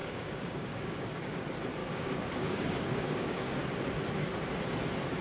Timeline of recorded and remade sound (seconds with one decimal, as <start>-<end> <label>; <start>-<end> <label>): 0.0-1.4 remade; 1.4-1.8 recorded; 1.8-3.6 remade; 3.6-5.2 recorded